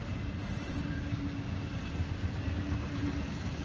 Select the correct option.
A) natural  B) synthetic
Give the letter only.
A